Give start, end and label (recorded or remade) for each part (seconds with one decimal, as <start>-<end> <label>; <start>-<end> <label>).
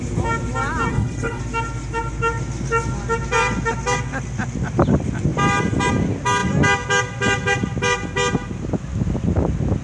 0.0-0.9 recorded; 0.9-1.4 remade; 1.4-9.8 recorded